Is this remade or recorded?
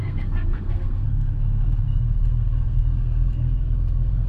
remade